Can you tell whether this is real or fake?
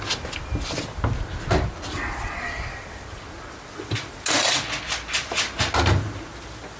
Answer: real